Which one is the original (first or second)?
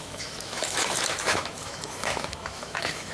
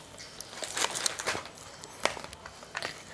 second